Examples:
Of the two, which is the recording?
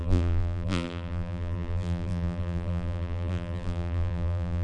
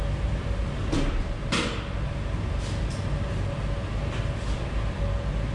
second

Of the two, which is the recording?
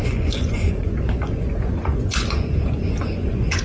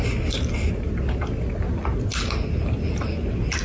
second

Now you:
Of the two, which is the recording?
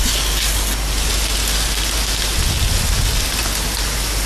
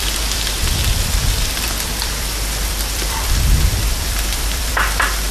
first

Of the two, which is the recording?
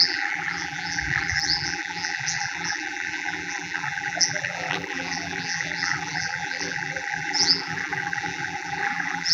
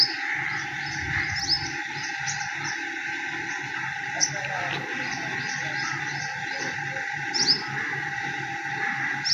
second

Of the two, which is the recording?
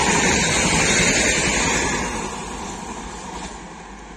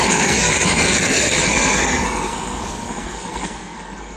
first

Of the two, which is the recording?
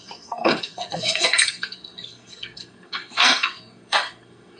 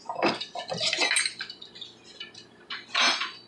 second